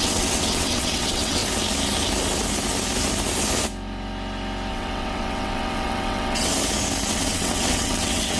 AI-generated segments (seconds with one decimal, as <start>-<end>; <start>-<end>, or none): 0.0-1.4; 4.7-6.5; 7.1-8.4